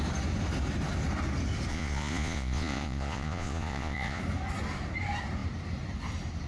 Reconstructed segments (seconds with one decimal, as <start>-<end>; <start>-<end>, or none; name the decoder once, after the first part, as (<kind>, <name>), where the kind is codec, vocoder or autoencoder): 1.7-4.2 (vocoder, Vocos)